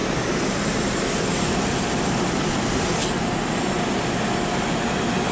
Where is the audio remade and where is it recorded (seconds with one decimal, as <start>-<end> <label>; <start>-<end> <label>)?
0.0-5.3 recorded